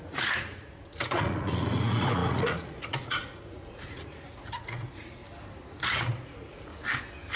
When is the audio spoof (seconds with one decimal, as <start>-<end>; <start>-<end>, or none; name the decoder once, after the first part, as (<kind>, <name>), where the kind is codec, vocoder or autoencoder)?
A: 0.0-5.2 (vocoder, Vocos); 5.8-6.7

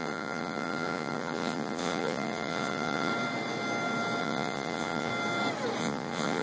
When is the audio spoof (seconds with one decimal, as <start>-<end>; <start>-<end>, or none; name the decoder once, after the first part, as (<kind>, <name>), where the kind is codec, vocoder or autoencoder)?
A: 0.0-3.1 (vocoder, Vocos); 4.2-5.1; 5.8-6.4

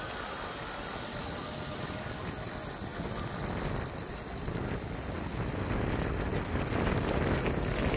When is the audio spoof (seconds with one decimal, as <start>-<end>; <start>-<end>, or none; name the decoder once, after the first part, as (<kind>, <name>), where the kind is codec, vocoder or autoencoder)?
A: none

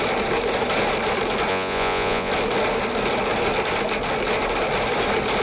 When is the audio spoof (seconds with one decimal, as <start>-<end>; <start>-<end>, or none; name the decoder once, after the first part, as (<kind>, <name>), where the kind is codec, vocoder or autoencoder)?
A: 1.5-2.3 (vocoder, Vocos)